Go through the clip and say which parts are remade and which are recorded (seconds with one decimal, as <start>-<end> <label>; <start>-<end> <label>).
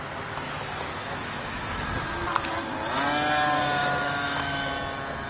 0.0-1.0 recorded; 1.0-1.9 remade; 1.9-3.8 recorded; 3.8-4.7 remade; 4.7-5.3 recorded